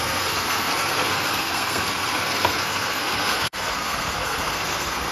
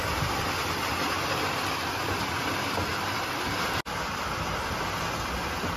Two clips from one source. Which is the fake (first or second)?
first